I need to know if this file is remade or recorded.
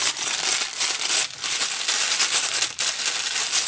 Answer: recorded